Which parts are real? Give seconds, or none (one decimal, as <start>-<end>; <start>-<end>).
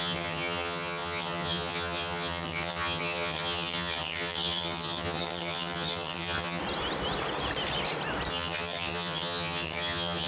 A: 6.6-8.3